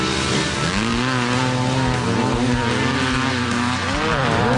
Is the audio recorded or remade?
recorded